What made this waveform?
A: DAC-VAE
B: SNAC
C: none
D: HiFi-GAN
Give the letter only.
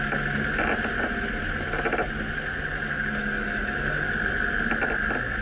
C